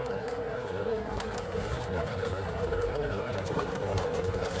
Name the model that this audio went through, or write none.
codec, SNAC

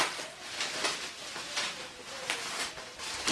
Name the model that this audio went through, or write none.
none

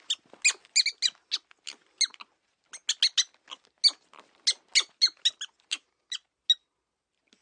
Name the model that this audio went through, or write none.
none